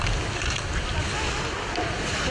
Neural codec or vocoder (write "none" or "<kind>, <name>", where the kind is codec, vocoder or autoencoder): none